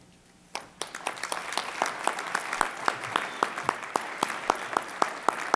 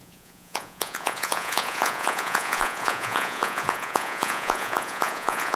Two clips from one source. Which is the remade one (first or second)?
second